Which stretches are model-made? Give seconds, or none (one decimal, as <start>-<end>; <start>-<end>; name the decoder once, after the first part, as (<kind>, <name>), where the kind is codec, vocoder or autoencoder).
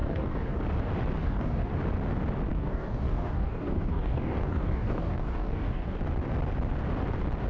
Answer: 0.0-0.6 (codec, DAC); 1.2-1.7; 2.5-6.0